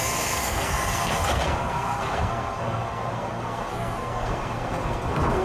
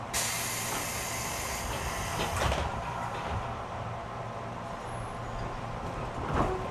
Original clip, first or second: second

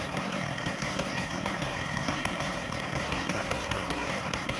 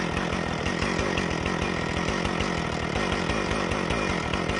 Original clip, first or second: second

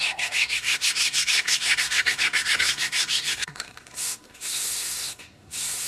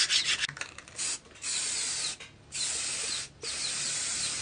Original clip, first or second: second